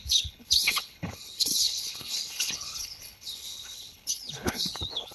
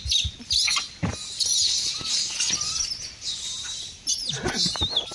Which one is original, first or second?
second